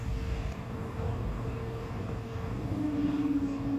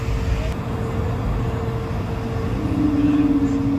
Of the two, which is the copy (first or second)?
first